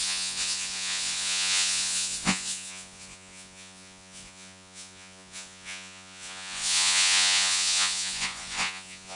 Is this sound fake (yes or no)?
yes